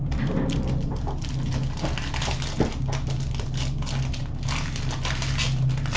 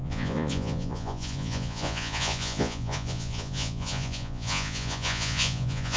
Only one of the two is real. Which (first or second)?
first